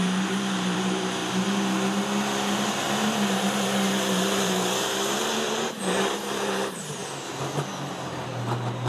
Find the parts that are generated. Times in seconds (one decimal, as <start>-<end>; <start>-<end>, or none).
0.0-1.2; 2.7-7.0; 7.7-8.9